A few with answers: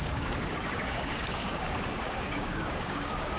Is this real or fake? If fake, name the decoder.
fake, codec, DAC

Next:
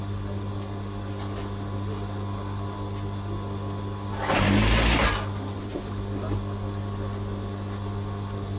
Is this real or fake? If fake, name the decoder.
real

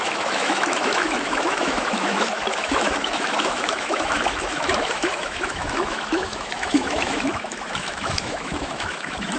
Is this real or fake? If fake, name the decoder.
fake, autoencoder, DAC-VAE